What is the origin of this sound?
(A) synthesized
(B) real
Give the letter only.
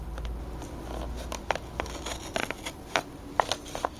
B